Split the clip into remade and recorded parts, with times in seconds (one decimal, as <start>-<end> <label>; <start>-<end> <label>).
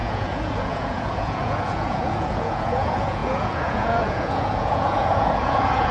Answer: 0.0-5.9 remade